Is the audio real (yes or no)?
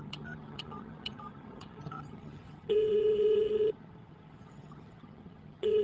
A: no